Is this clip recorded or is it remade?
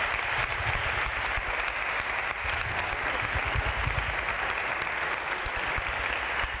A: recorded